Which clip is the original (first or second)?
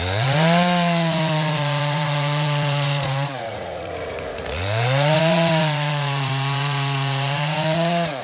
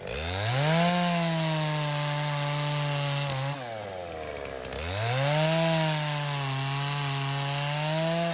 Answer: second